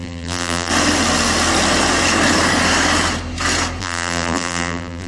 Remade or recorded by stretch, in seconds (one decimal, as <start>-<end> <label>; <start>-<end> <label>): 0.0-0.7 remade; 0.7-3.8 recorded; 3.8-5.1 remade